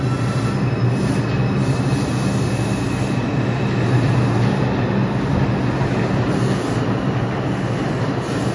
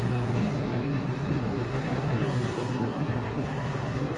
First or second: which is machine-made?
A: second